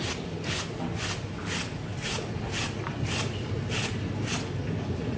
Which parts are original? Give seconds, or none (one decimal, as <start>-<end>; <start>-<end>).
0.0-5.2